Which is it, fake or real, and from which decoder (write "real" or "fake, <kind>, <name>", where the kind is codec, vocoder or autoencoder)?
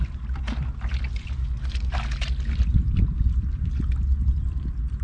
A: real